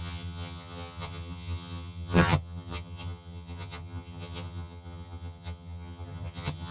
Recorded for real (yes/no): no